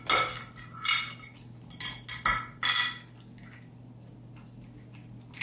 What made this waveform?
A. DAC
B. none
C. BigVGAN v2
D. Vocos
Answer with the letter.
B